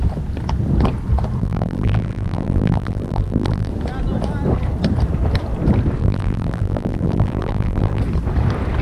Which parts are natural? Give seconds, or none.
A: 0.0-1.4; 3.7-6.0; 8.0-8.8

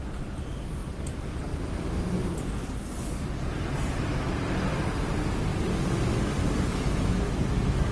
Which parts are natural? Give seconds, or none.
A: 0.0-7.9

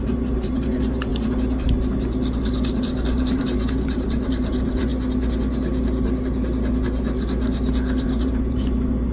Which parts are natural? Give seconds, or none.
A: 1.1-2.8; 4.9-8.0

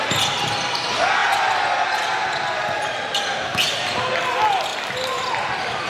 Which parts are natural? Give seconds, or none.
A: 0.0-4.7; 5.3-5.9

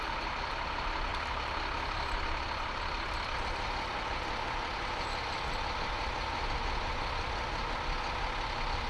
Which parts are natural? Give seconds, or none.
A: 0.0-1.1; 5.0-8.9